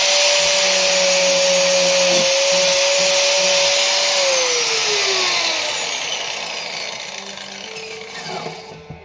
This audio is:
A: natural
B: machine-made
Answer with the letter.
A